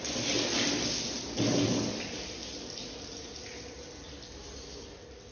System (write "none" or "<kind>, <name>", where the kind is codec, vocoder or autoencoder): none